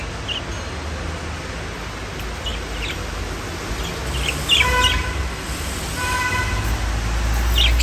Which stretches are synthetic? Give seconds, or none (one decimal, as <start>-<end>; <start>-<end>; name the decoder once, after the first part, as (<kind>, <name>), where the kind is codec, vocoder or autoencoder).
none